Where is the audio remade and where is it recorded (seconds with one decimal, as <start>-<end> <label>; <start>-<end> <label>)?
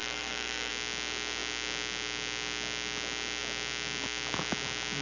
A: 0.0-0.7 remade; 0.7-5.0 recorded